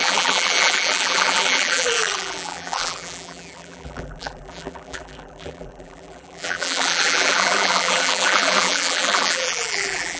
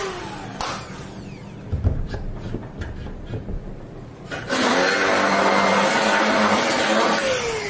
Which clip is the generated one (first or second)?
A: first